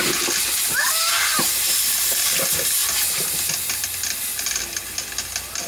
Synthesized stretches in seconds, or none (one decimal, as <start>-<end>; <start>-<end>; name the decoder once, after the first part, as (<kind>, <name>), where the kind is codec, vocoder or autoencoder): 2.8-3.7 (vocoder, BigVGAN v2)